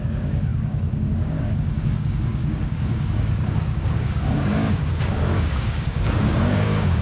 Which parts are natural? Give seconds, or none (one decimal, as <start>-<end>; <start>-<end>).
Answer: none